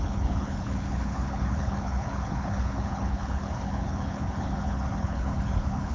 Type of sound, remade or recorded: remade